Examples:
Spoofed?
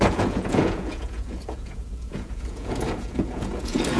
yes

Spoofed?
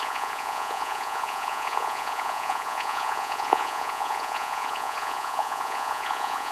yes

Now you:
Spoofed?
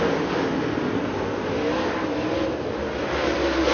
no